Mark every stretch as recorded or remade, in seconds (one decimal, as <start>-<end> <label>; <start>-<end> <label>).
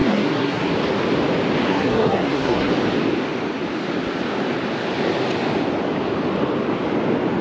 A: 0.0-0.7 remade; 0.7-1.7 recorded; 1.7-2.7 remade; 2.7-7.4 recorded